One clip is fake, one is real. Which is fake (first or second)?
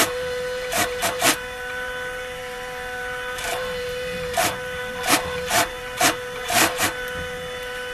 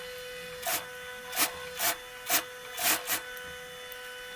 first